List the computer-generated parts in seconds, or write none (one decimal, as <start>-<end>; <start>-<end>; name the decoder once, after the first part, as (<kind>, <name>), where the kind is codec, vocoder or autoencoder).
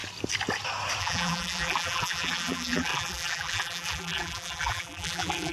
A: 1.0-5.5 (vocoder, BigVGAN v2)